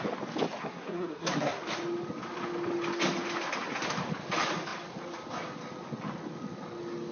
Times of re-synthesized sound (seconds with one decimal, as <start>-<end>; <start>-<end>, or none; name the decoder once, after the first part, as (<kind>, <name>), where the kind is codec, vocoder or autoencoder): 0.6-1.6 (codec, SNAC)